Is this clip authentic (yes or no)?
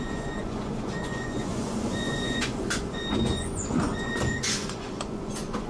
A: no